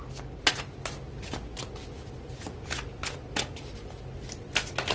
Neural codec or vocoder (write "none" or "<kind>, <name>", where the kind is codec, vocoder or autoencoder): none